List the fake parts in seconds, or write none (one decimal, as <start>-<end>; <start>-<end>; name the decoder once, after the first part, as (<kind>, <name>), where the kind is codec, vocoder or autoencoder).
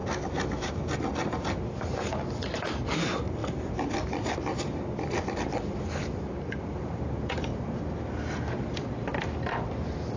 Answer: 1.8-7.5 (vocoder, BigVGAN v2)